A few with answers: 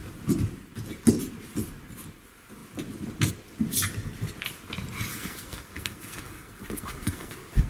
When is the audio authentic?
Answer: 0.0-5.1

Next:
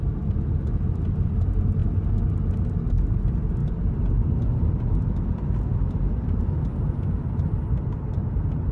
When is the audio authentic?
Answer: 0.0-8.7